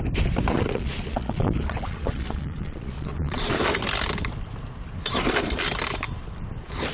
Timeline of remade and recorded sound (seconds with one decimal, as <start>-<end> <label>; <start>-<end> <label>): 0.0-0.5 recorded; 0.5-3.4 remade; 3.4-6.9 recorded

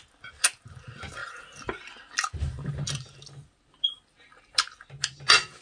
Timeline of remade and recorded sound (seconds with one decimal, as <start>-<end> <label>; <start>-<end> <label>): 0.0-5.6 recorded

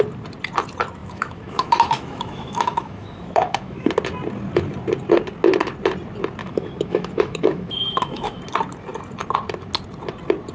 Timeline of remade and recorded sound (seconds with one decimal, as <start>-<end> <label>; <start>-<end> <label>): 0.0-1.0 recorded; 1.0-3.9 remade; 3.9-6.4 recorded; 6.4-8.4 remade; 8.4-10.5 recorded

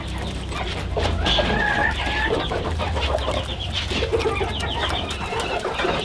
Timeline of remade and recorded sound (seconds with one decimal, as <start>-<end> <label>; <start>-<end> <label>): 0.0-1.8 recorded; 1.8-3.0 remade; 3.0-6.0 recorded

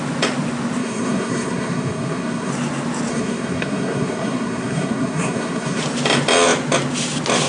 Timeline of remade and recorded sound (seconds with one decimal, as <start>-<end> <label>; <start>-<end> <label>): 0.0-0.8 recorded; 0.8-2.5 remade; 2.5-3.1 recorded; 3.1-5.8 remade; 5.8-7.5 recorded